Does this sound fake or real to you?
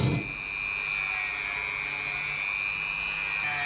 real